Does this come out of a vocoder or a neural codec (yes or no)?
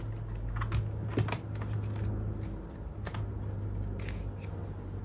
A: no